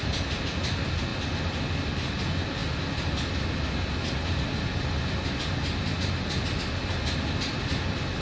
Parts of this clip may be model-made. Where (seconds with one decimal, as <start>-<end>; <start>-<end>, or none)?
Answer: none